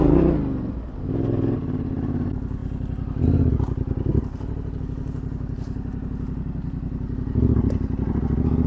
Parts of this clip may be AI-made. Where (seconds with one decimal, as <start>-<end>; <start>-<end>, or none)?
none